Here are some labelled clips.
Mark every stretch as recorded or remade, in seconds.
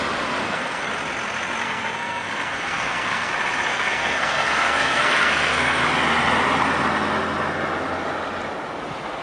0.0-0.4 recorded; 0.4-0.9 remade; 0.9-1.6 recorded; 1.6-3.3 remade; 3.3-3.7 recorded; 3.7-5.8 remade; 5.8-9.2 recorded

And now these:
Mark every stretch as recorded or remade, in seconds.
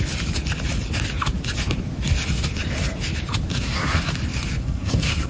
0.0-3.5 recorded; 3.5-4.1 remade; 4.1-4.6 recorded; 4.6-5.3 remade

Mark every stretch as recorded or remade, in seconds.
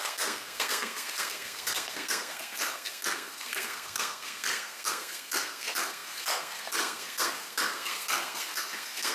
0.0-9.1 remade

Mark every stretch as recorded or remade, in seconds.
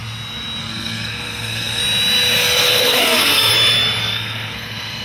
0.0-0.6 recorded; 0.6-1.8 remade; 1.8-2.6 recorded; 2.6-3.5 remade; 3.5-4.0 recorded; 4.0-5.0 remade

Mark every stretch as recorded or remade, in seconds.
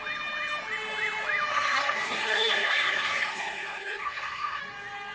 0.0-1.5 recorded; 1.5-4.6 remade; 4.6-5.1 recorded